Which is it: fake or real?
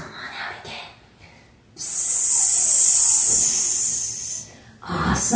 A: real